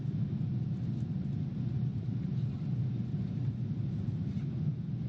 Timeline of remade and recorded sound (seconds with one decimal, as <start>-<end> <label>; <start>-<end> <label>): 0.0-1.9 recorded; 1.9-4.3 remade; 4.3-5.1 recorded